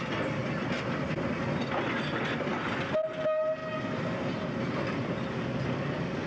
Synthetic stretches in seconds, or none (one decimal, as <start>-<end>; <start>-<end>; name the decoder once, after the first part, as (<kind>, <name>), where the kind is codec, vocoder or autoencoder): none